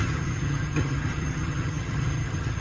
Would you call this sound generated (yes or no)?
yes